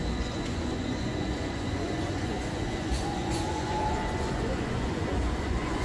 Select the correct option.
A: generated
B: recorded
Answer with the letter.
A